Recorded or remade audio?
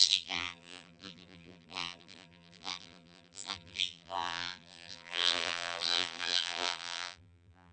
remade